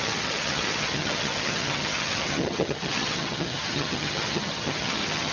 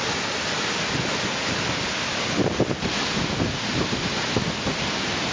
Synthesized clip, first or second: first